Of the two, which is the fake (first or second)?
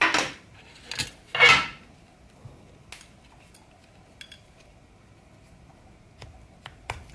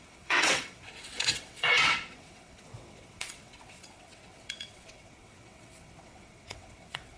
second